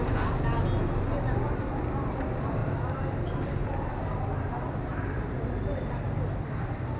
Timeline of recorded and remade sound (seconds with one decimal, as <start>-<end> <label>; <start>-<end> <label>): 0.0-3.6 recorded; 3.6-5.9 remade; 5.9-7.0 recorded